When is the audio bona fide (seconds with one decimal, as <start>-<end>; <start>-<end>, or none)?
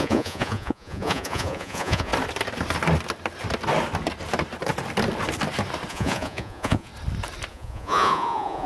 2.1-5.9; 6.9-7.5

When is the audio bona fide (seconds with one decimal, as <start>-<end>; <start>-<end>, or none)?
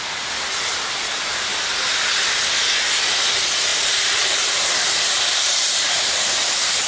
0.0-3.7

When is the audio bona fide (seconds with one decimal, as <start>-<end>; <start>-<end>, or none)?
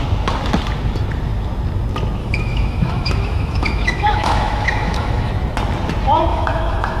0.0-2.2; 5.3-6.3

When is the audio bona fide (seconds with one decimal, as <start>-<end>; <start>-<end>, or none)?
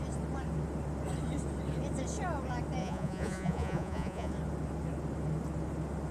0.0-2.8; 4.3-6.1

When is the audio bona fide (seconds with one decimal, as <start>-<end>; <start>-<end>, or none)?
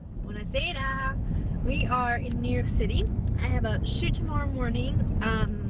0.0-0.5; 3.4-4.1; 4.8-5.7